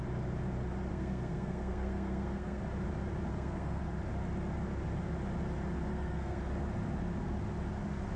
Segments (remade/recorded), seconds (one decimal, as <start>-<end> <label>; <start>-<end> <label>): 0.0-0.9 recorded; 0.9-2.6 remade; 2.6-3.3 recorded; 3.3-3.8 remade; 3.8-5.9 recorded; 5.9-6.4 remade; 6.4-8.2 recorded